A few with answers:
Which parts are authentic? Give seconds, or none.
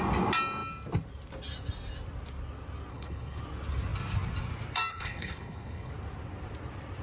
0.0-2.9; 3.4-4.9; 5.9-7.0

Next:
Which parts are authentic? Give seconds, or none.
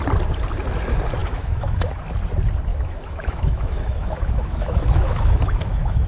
0.0-1.2; 1.8-2.7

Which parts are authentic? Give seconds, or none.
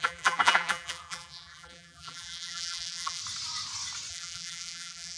3.2-4.1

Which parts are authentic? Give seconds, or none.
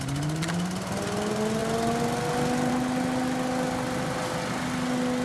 0.0-5.2